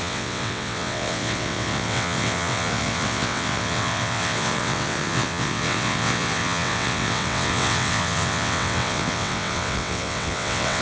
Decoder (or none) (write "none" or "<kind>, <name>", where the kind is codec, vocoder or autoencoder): vocoder, WaveNeXt